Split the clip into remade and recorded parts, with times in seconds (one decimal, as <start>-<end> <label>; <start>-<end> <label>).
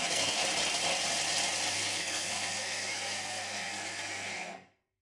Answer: 0.0-0.4 remade; 0.4-1.7 recorded; 1.7-5.0 remade